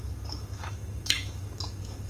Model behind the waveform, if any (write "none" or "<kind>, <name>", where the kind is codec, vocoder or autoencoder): autoencoder, DAC-VAE